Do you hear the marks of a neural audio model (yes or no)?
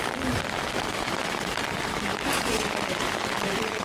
yes